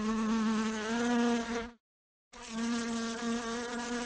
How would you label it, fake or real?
real